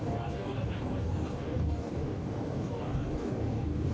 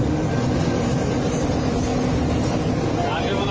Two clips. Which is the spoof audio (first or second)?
first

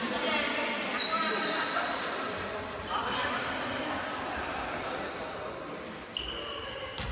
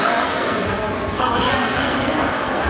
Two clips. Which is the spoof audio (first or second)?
second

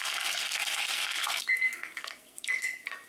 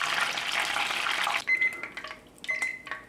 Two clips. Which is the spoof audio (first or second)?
first